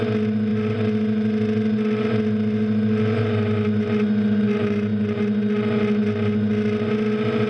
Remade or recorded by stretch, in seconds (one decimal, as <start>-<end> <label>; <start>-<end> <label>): 0.0-7.5 recorded